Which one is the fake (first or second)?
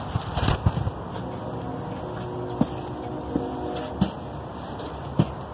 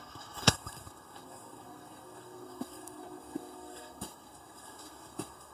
second